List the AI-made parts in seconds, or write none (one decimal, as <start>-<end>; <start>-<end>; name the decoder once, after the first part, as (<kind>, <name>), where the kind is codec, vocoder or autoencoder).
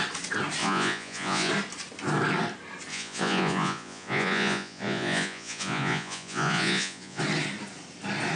0.6-1.5 (vocoder, Vocos); 2.9-7.2